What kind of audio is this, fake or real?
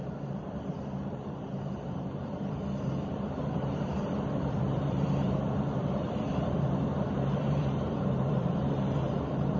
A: fake